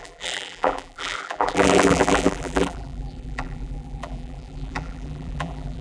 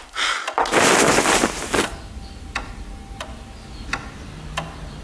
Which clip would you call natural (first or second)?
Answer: second